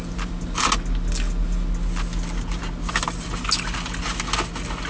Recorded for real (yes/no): yes